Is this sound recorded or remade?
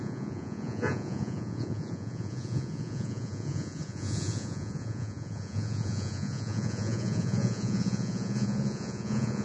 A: remade